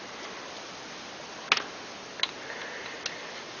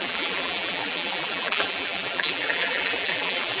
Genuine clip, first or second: first